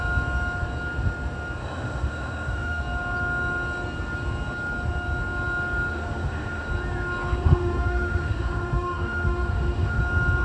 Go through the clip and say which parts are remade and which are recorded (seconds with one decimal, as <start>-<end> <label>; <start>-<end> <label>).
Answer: 0.0-1.6 recorded; 1.6-2.8 remade; 2.8-5.9 recorded; 5.9-6.7 remade; 6.7-7.4 recorded; 7.4-10.0 remade; 10.0-10.4 recorded